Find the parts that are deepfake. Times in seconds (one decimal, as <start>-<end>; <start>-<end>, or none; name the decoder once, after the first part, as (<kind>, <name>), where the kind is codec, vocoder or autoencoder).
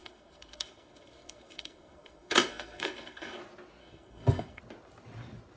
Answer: 0.0-3.4 (codec, SNAC); 3.8-4.6